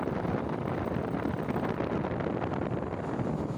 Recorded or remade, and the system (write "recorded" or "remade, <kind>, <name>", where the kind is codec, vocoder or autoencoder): recorded